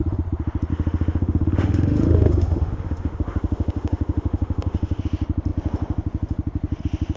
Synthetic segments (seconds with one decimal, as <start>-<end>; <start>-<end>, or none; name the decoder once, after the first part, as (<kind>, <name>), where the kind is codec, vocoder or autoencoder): 0.7-5.0 (autoencoder, DAC-VAE)